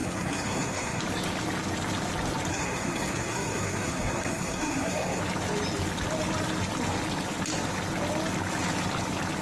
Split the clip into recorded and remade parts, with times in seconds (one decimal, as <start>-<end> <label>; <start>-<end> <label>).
0.0-1.0 remade; 1.0-2.5 recorded; 2.5-5.2 remade; 5.2-9.4 recorded